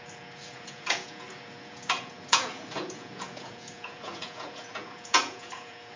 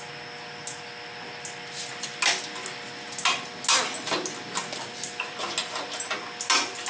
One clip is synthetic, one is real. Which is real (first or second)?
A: second